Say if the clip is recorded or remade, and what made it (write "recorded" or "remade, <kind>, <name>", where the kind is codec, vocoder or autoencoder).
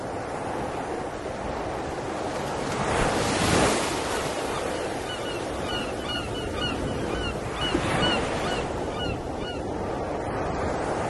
recorded